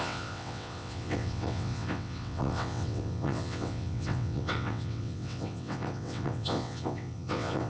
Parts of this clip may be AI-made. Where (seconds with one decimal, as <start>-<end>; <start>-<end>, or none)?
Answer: 0.0-7.7